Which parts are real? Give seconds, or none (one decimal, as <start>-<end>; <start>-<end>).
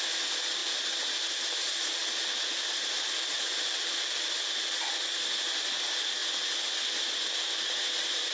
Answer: 0.0-8.3